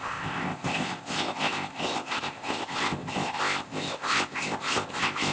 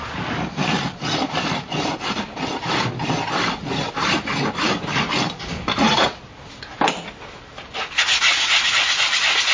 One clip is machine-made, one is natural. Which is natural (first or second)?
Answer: second